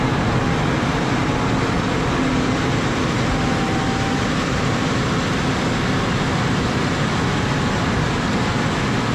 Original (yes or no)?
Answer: yes